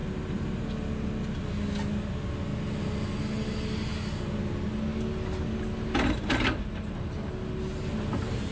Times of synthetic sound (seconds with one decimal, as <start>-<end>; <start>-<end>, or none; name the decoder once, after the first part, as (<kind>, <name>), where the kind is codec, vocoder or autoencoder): none